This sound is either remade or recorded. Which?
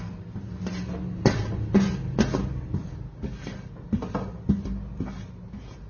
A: recorded